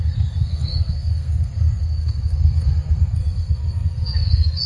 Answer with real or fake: fake